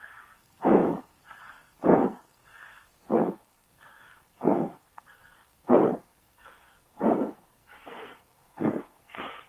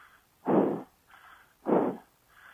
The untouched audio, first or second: second